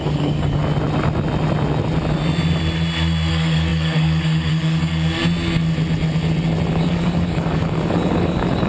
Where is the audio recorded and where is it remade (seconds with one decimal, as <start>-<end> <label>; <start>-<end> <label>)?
0.0-0.6 remade; 0.6-3.3 recorded; 3.3-5.2 remade; 5.2-6.7 recorded; 6.7-8.7 remade